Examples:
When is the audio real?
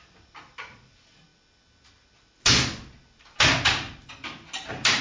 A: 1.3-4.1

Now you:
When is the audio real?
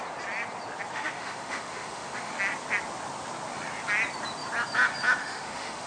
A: 0.0-0.9; 2.3-5.2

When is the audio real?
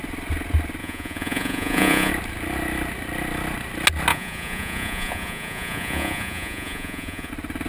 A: 0.0-0.8; 2.1-4.1; 7.3-7.7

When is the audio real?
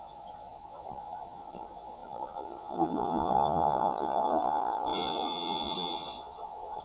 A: none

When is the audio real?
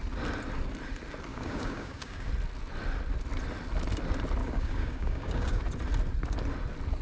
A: 0.0-1.3; 2.3-4.4; 5.6-7.0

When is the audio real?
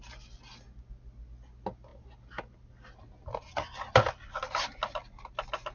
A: 0.0-5.7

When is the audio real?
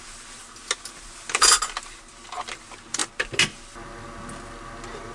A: 0.0-5.1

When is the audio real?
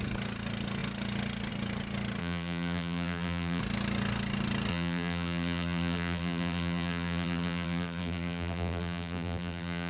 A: 0.0-2.2; 3.6-4.7